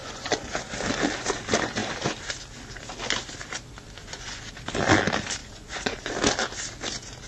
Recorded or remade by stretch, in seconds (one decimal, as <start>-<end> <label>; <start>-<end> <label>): 0.0-0.6 remade; 0.6-4.0 recorded; 4.0-4.5 remade; 4.5-5.4 recorded; 5.4-6.1 remade; 6.1-7.3 recorded